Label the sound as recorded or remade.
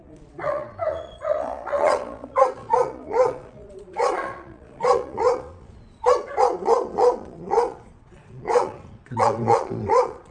remade